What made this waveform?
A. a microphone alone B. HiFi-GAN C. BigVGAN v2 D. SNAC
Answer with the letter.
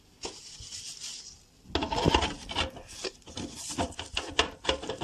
A